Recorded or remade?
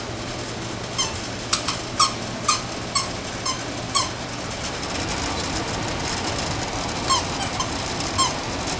recorded